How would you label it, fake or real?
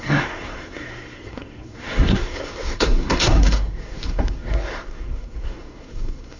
fake